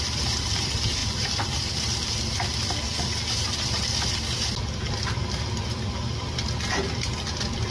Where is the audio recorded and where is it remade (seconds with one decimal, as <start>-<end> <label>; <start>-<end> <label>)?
0.0-1.0 recorded; 1.0-1.7 remade; 1.7-7.7 recorded